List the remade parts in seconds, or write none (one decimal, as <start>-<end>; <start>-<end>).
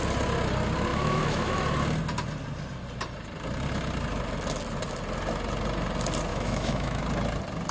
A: 0.9-1.6; 6.3-7.0